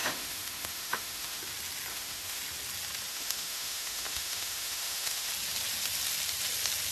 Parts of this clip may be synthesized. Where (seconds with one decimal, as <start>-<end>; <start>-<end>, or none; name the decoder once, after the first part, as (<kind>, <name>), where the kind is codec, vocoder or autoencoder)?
0.0-1.4 (autoencoder, DAC-VAE); 1.9-2.4; 3.1-5.3